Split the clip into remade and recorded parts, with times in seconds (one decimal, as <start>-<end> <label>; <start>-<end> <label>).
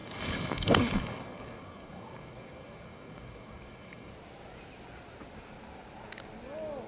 0.0-4.1 remade; 4.1-6.9 recorded